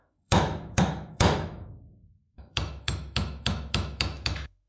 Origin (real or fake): fake